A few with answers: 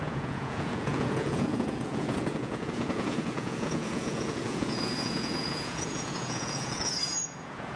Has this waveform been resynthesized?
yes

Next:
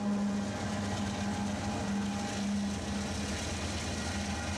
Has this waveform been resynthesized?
no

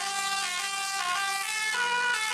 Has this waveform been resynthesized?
yes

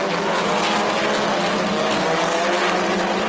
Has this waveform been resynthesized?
no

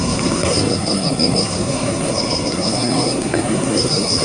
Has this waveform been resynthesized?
yes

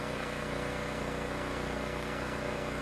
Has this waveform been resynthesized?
yes